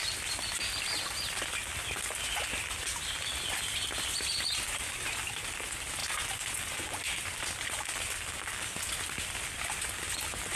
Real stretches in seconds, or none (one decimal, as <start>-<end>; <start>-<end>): 0.0-10.6